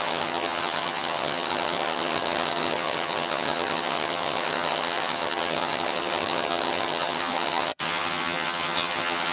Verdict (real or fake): fake